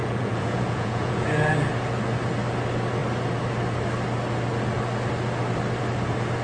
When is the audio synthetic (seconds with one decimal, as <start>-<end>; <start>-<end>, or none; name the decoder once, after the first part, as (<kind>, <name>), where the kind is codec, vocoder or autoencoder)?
0.0-1.5 (vocoder, Vocos)